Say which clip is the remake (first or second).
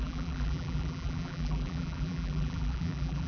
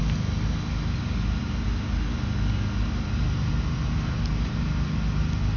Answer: first